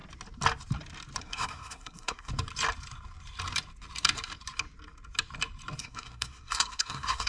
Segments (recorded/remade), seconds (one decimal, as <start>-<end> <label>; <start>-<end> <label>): 0.0-1.2 recorded; 1.2-2.3 remade; 2.3-5.8 recorded; 5.8-7.3 remade